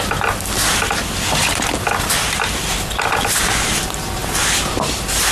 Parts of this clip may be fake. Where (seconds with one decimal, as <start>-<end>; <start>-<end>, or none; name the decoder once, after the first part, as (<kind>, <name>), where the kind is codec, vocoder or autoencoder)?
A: 4.2-4.7 (vocoder, BigVGAN v2)